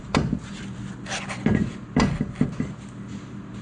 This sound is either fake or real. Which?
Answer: real